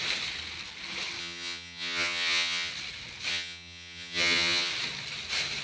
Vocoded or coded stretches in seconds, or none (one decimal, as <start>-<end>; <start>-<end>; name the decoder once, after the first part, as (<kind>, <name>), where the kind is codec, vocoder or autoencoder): 1.2-2.7 (vocoder, HiFi-GAN); 3.3-4.7